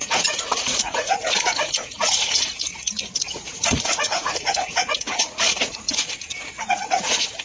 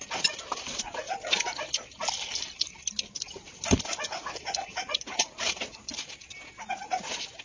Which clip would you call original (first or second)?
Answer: second